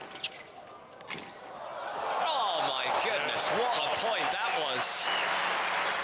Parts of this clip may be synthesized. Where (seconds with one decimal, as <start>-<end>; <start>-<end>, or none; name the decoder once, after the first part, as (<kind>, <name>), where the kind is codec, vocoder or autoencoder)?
none